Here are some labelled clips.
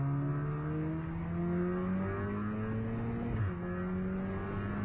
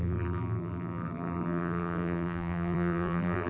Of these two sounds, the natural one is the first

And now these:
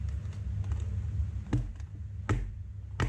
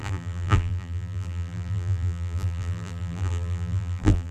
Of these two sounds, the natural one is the first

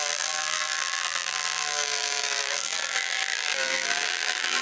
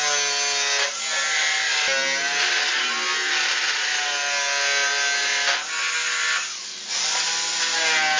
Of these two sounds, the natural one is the second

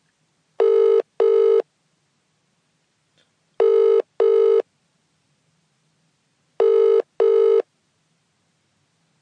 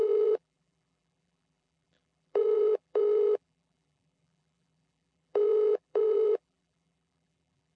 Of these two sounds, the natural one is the first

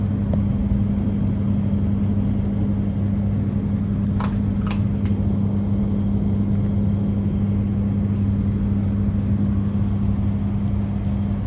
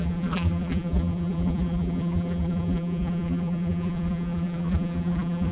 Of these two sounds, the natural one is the first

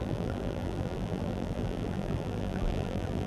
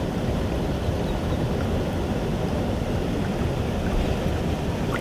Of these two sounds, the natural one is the second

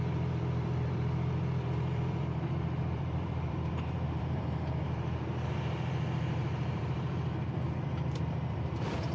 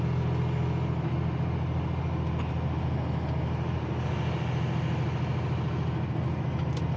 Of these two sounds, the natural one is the second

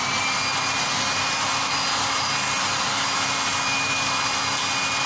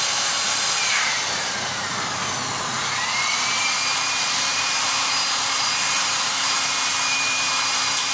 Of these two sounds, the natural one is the first